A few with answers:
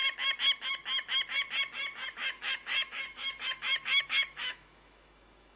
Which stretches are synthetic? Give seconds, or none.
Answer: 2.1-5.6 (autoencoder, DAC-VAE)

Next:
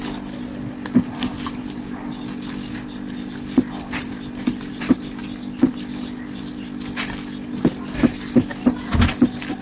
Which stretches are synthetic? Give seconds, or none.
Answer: none

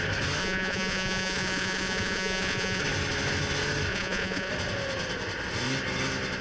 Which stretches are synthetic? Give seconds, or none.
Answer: 0.4-2.8 (vocoder, Vocos); 3.9-4.5

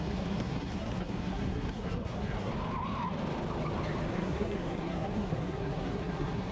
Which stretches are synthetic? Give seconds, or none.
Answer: 0.0-2.5 (codec, SNAC); 4.1-6.5

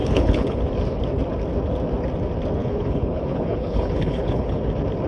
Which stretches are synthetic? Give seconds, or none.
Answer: 0.0-0.6 (codec, HILCodec); 2.6-4.6

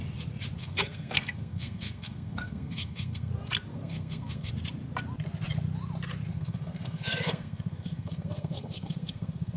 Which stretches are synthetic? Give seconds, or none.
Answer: 0.6-3.3 (codec, SNAC); 3.7-4.5; 6.3-9.6

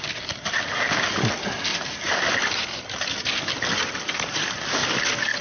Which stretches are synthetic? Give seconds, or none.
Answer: none